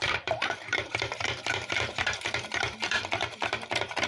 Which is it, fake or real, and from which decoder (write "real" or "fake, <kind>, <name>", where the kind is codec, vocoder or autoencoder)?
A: fake, vocoder, BigVGAN v2